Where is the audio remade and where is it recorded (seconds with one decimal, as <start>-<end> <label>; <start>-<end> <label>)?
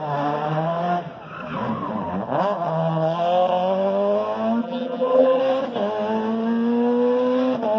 0.0-4.6 recorded; 4.6-5.4 remade; 5.4-7.8 recorded